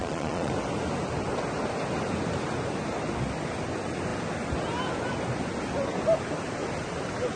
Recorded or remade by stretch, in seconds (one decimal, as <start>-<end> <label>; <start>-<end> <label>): 0.0-0.5 remade; 0.5-7.4 recorded